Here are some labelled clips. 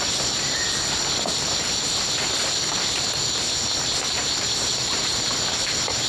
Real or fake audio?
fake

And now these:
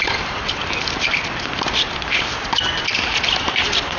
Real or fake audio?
fake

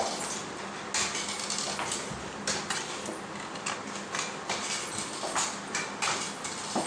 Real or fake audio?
real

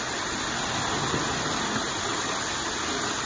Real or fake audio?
real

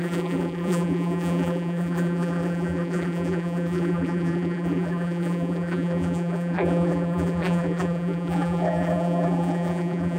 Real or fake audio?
fake